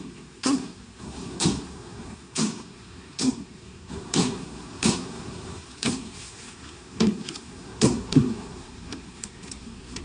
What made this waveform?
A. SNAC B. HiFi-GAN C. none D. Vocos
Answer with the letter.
A